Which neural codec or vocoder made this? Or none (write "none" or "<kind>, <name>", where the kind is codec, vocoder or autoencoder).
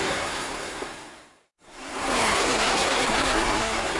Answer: codec, SNAC